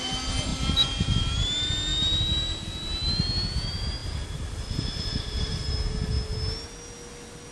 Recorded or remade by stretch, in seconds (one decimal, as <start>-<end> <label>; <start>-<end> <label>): 0.0-0.5 recorded; 0.5-1.2 remade; 1.2-4.0 recorded; 4.0-5.7 remade; 5.7-7.5 recorded